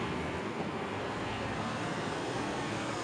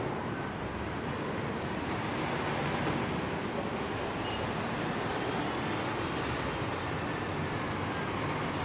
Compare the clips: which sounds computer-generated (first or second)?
first